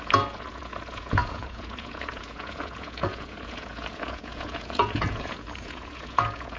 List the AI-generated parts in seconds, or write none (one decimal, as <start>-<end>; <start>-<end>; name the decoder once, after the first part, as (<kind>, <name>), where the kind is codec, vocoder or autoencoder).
0.0-6.6 (vocoder, Vocos)